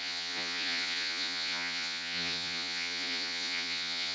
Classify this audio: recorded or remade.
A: remade